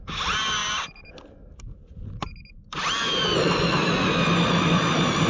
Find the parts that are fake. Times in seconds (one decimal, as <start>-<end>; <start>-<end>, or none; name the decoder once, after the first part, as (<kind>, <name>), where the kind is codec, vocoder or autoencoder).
none